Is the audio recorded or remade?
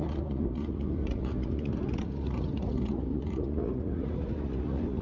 remade